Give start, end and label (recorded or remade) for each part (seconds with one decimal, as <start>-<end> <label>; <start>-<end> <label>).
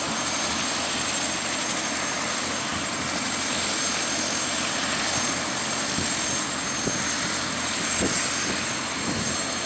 0.0-9.7 recorded